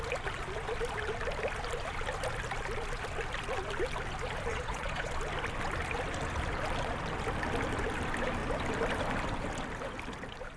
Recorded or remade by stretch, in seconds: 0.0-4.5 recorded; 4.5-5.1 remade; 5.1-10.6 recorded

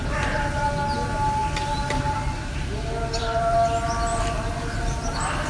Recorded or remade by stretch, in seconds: 0.0-5.5 recorded

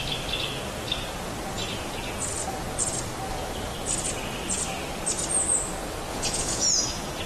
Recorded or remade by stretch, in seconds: 0.0-6.1 recorded; 6.1-6.7 remade; 6.7-7.3 recorded

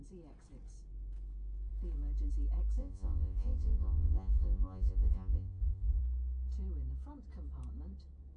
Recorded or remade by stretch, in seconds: 0.0-2.8 recorded; 2.8-6.0 remade; 6.0-8.4 recorded

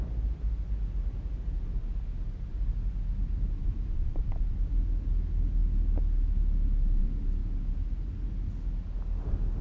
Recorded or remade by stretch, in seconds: 0.0-9.6 recorded

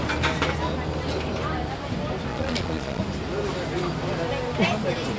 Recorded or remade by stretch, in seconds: 0.0-2.3 recorded; 2.3-3.0 remade; 3.0-5.2 recorded

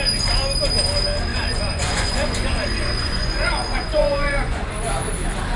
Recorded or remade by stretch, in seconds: 0.0-1.3 recorded; 1.3-4.7 remade; 4.7-5.6 recorded

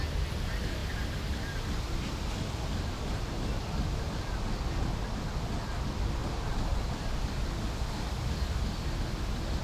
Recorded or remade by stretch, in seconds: 0.0-9.6 recorded